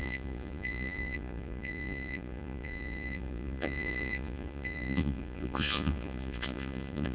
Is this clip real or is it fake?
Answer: fake